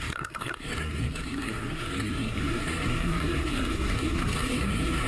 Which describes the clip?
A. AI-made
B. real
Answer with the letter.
A